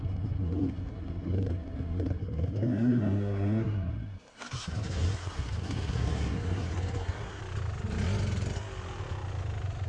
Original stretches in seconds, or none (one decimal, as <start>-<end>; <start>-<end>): 7.4-9.9